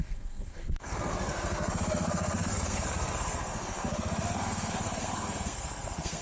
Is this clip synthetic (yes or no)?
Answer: yes